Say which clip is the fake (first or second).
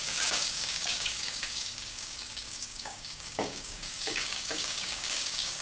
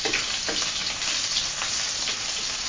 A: first